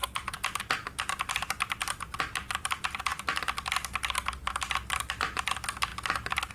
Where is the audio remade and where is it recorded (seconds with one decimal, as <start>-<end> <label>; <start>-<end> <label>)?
0.0-6.5 recorded